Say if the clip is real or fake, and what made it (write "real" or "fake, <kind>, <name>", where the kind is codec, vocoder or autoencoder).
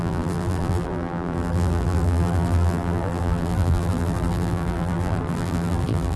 fake, vocoder, BigVGAN v2